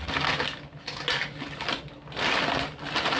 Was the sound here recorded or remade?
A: recorded